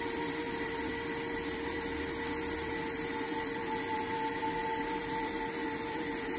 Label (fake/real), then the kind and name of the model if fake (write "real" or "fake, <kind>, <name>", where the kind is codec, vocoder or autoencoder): fake, vocoder, BigVGAN v2